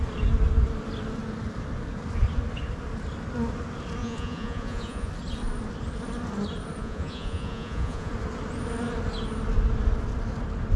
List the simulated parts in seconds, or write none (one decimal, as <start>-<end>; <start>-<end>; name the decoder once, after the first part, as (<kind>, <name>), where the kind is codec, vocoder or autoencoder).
4.0-5.1 (vocoder, Vocos); 6.8-8.1